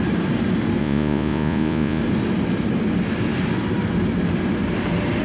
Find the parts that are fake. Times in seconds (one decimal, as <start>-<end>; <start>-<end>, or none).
0.8-2.0

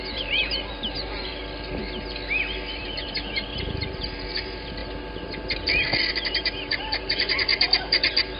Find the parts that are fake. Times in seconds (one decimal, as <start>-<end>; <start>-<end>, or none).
0.0-1.4; 2.8-4.8; 6.1-7.5

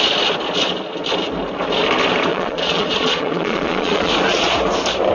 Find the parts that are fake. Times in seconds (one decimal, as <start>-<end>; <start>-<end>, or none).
2.3-4.1

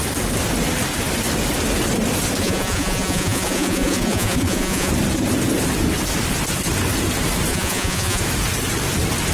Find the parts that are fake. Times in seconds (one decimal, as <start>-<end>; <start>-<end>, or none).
2.4-4.9; 7.5-8.2